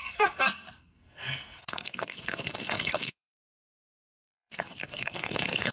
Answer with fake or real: fake